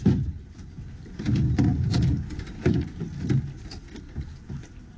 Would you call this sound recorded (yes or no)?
yes